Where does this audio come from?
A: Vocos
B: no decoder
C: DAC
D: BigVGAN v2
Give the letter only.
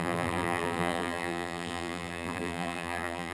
D